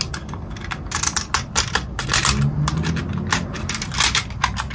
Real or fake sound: real